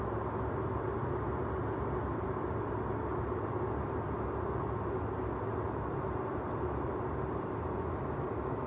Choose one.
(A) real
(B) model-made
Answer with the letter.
A